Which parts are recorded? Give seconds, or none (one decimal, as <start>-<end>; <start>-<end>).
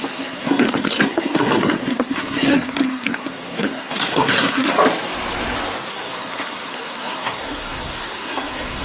4.8-5.9